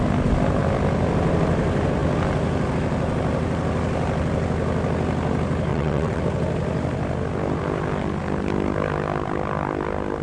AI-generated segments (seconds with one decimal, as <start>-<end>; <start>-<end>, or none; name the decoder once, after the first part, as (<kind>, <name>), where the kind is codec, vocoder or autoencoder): 5.7-6.2 (vocoder, WaveNeXt)